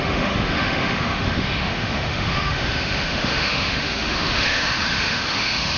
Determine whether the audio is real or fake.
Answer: fake